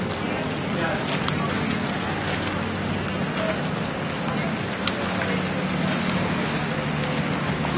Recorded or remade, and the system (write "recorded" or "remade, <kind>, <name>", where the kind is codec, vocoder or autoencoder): recorded